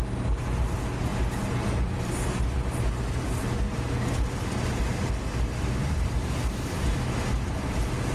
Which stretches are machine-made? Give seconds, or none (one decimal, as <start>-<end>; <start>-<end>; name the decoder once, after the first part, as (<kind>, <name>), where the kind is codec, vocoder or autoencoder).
none